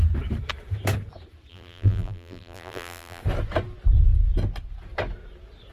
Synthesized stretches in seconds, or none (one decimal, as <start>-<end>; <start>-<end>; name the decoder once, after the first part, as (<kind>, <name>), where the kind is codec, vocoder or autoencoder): 1.5-3.2 (vocoder, BigVGAN v2)